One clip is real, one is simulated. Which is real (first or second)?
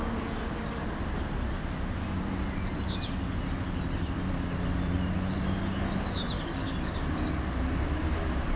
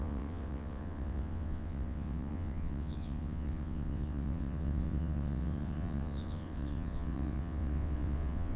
first